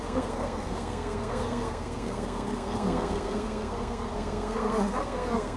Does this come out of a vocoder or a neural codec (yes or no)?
yes